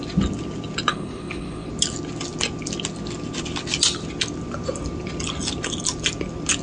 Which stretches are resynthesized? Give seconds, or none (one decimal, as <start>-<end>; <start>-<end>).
0.9-1.7